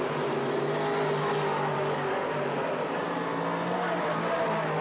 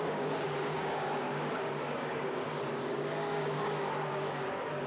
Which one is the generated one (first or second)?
second